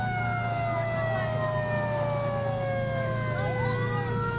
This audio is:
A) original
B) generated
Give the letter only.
A